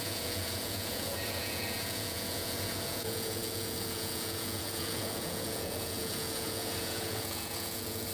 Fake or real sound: fake